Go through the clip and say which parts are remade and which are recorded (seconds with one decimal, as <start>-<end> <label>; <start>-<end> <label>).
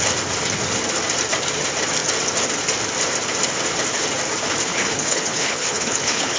0.0-4.7 recorded; 4.7-6.4 remade